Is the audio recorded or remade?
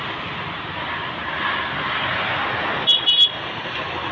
recorded